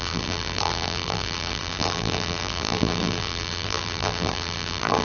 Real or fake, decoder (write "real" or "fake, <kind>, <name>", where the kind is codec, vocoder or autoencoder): fake, vocoder, BigVGAN v2